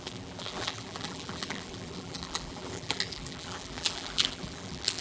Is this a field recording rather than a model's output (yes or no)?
no